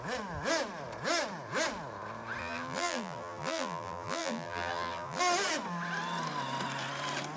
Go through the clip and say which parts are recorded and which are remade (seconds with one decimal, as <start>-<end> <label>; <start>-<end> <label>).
0.0-2.4 recorded; 2.4-5.2 remade; 5.2-7.4 recorded